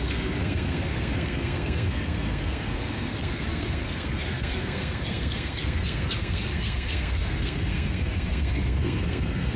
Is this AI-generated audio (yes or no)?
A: yes